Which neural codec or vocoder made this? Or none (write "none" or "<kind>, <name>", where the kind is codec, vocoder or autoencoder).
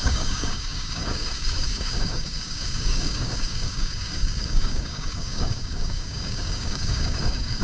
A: codec, DAC